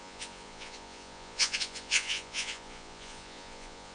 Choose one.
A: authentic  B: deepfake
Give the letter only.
B